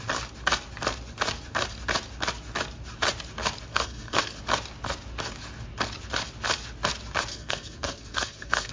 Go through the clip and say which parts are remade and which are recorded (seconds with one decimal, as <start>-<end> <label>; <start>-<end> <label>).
0.0-3.7 recorded; 3.7-4.4 remade; 4.4-7.3 recorded; 7.3-8.7 remade